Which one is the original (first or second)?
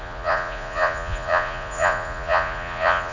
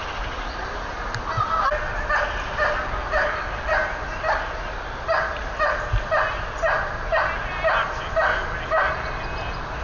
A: second